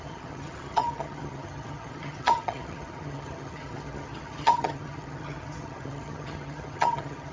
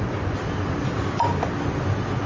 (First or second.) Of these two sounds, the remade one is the first